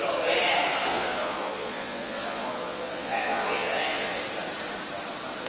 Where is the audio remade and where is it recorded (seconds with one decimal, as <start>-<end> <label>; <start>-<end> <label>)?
0.0-0.9 recorded; 0.9-4.2 remade; 4.2-5.5 recorded